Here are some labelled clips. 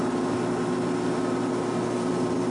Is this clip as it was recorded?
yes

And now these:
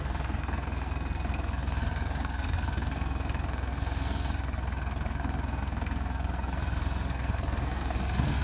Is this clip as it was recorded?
no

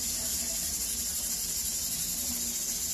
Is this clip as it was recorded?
yes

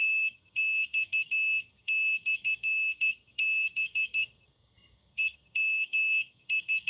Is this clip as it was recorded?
no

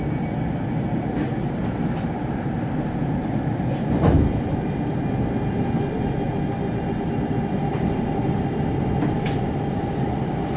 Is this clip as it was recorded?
yes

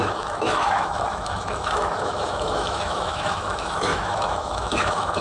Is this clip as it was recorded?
no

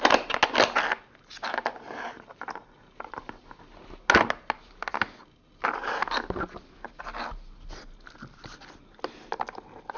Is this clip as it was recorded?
yes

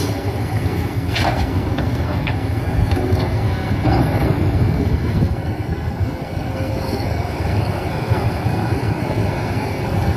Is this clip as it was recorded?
no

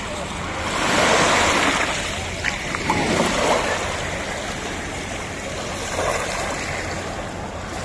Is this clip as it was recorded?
yes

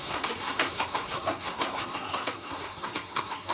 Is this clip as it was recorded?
no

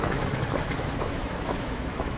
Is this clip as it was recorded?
no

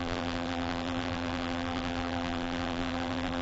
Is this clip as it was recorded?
no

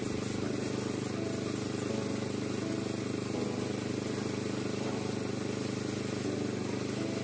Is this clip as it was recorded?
yes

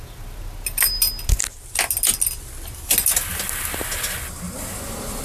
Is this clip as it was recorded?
yes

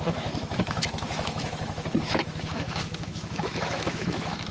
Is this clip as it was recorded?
no